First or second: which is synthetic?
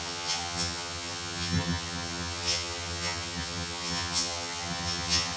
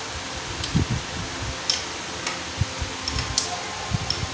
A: first